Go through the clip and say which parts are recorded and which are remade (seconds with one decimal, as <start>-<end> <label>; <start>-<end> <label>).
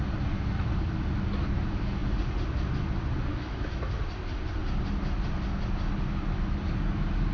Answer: 0.0-3.3 recorded; 3.3-3.9 remade; 3.9-7.3 recorded